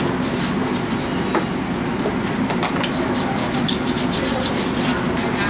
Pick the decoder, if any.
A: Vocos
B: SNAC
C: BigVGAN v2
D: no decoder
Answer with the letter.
D